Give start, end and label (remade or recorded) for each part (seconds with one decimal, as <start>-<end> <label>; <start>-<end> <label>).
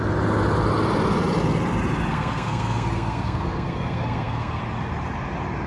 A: 0.0-2.1 recorded; 2.1-4.6 remade; 4.6-5.7 recorded